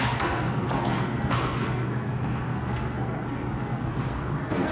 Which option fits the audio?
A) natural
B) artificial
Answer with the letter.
B